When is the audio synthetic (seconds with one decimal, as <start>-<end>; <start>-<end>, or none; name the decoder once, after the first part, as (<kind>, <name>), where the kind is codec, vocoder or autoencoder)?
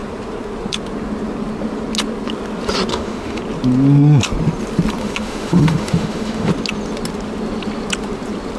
2.9-3.4 (autoencoder, DAC-VAE); 5.0-6.5